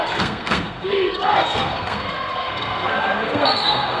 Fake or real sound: fake